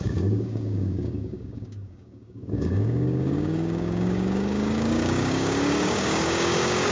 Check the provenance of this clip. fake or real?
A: fake